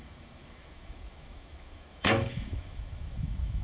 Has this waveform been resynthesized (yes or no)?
yes